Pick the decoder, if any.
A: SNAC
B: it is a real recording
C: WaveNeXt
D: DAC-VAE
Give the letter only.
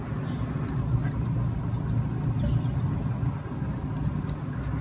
B